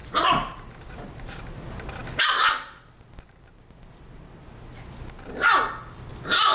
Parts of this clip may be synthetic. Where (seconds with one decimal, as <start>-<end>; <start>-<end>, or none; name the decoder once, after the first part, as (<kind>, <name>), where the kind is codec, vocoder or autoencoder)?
none